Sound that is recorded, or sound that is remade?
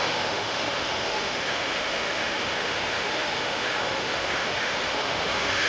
remade